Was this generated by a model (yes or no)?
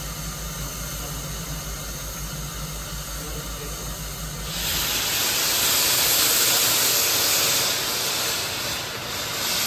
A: no